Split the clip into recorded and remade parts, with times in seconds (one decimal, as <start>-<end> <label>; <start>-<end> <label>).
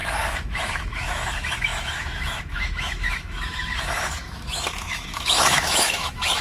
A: 0.0-6.4 remade